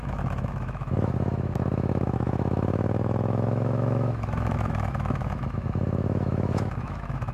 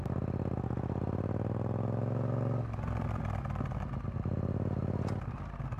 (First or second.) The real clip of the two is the second